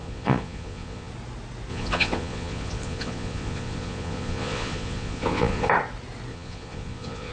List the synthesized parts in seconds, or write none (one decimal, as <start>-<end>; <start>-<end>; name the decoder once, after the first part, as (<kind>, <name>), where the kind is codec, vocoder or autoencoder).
0.0-1.1 (vocoder, Vocos); 1.7-5.7; 6.3-7.3